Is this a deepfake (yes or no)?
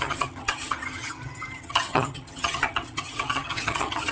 yes